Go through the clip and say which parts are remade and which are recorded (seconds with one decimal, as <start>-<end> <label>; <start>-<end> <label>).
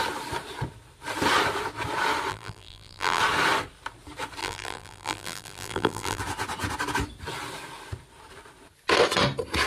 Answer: 0.0-2.3 recorded; 2.3-3.2 remade; 3.2-4.4 recorded; 4.4-6.2 remade; 6.2-9.7 recorded